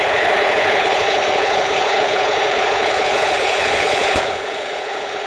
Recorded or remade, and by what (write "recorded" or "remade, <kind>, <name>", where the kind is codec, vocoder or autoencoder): remade, codec, HILCodec